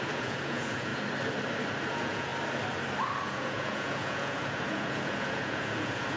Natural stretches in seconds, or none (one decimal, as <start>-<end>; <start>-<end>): 0.9-1.9; 2.3-3.2